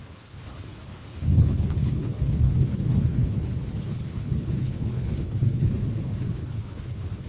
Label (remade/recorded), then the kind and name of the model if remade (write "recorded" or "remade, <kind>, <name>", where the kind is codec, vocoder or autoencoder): remade, codec, HILCodec